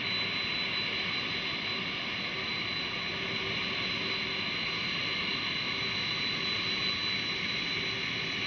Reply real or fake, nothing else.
real